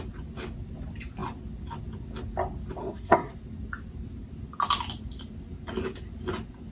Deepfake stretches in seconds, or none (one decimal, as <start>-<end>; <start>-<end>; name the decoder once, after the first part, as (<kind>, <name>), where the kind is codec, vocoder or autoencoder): 2.8-3.3 (codec, SNAC)